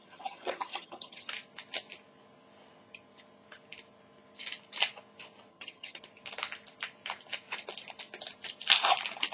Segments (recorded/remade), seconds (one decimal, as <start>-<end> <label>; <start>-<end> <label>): 0.0-1.3 remade; 1.3-5.5 recorded; 5.5-6.0 remade; 6.0-9.3 recorded